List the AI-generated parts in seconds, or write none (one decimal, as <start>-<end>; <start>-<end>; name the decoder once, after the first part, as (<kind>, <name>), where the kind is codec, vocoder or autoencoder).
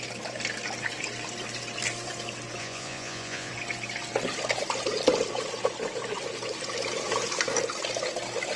2.6-3.5 (vocoder, Vocos)